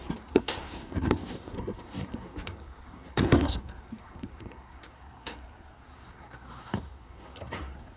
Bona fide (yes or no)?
no